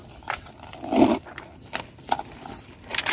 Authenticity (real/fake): real